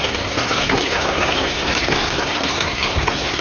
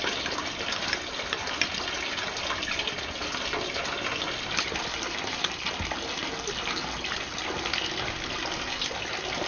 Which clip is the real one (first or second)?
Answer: second